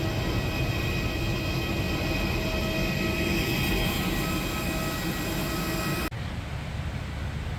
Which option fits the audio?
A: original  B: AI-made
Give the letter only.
A